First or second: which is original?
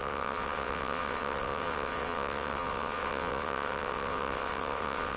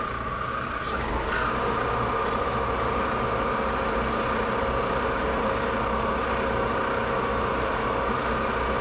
second